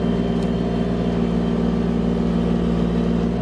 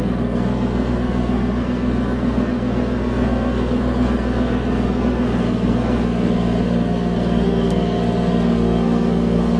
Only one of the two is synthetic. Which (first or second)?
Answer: second